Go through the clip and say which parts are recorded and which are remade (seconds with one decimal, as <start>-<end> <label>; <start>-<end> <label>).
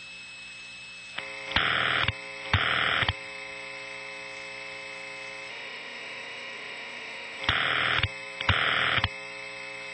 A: 0.0-5.5 recorded; 5.5-7.4 remade; 7.4-9.9 recorded